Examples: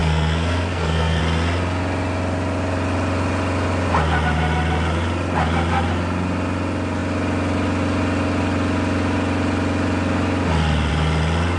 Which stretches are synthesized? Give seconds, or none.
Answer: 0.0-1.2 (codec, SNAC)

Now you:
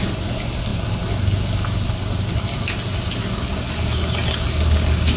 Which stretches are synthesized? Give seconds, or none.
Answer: none

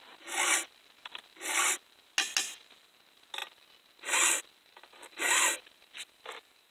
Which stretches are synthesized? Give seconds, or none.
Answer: none

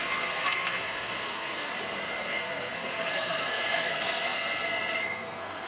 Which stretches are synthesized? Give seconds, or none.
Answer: 0.0-1.7 (codec, SNAC); 2.2-5.7

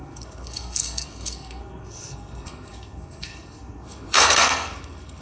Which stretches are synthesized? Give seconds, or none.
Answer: 0.0-5.2 (codec, SNAC)

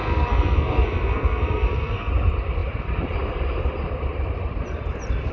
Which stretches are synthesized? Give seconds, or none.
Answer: 0.0-2.1 (codec, SNAC)

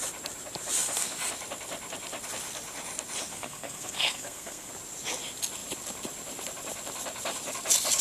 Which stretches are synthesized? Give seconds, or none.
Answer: 3.3-4.7 (codec, SNAC)